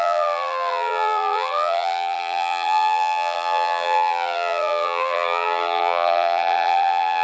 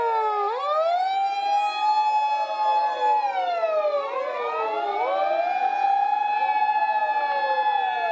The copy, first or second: first